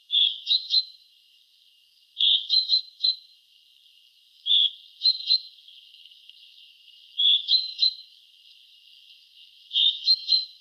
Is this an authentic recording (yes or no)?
no